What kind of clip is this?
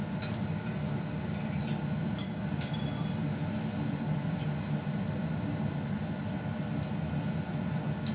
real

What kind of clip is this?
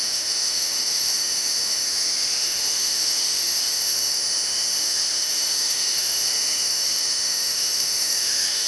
fake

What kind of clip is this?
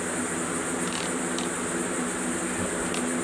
real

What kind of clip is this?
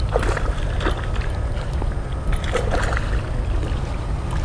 real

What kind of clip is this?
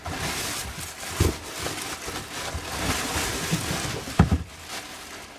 real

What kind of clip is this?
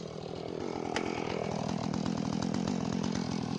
real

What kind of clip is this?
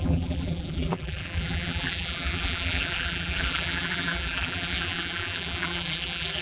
fake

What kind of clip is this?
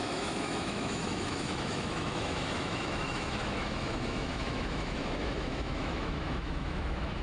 fake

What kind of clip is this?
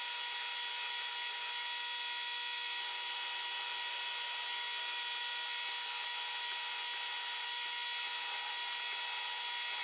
real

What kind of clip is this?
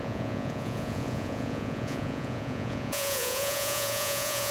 fake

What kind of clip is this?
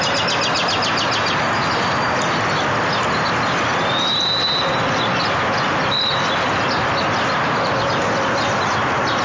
real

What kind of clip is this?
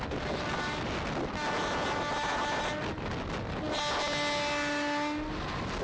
real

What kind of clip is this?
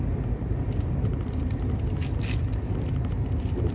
real